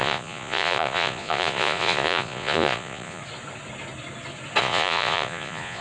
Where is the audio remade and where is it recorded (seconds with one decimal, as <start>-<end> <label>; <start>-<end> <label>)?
0.0-3.2 remade; 3.2-4.6 recorded; 4.6-5.8 remade